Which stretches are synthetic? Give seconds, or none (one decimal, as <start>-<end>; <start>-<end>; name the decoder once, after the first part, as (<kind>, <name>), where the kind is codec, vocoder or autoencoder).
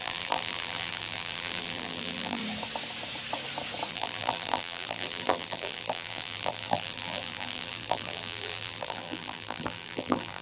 0.0-2.4 (vocoder, BigVGAN v2); 3.9-10.4